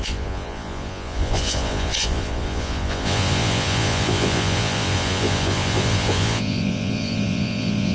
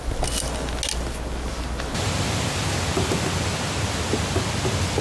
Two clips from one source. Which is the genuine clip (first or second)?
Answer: second